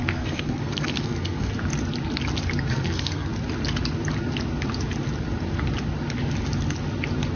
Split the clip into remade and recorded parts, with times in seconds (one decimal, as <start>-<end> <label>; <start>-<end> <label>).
0.0-1.5 remade; 1.5-2.7 recorded; 2.7-3.3 remade; 3.3-7.4 recorded